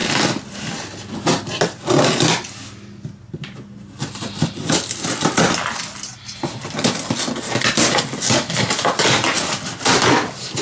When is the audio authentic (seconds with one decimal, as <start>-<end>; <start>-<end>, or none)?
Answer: 0.0-10.6